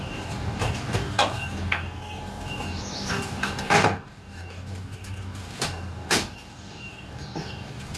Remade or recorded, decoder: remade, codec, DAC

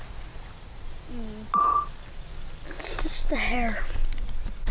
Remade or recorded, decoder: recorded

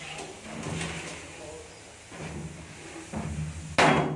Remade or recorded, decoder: recorded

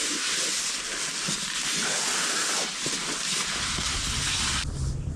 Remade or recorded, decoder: recorded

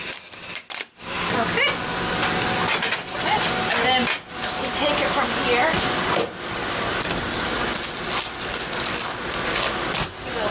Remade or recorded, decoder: recorded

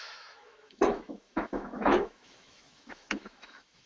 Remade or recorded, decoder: remade, autoencoder, DAC-VAE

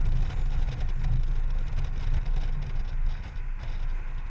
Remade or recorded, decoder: recorded